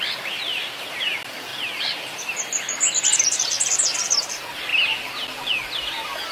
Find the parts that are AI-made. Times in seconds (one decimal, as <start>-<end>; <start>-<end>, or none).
none